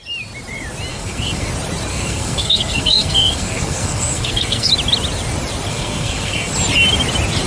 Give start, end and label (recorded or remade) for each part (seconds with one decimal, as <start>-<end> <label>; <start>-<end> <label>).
0.0-0.9 recorded; 0.9-1.5 remade; 1.5-1.9 recorded; 1.9-4.7 remade; 4.7-5.7 recorded; 5.7-6.5 remade; 6.5-7.5 recorded